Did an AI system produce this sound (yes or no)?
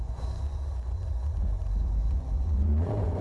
yes